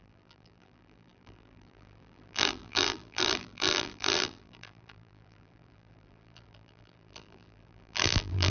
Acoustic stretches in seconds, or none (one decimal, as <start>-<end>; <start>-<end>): none